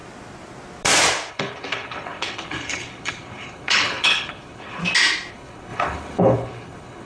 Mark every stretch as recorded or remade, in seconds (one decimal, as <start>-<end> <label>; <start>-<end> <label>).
0.0-1.3 recorded; 1.3-4.8 remade; 4.8-5.3 recorded; 5.3-7.1 remade